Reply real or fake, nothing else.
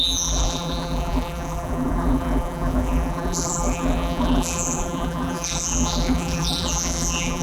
fake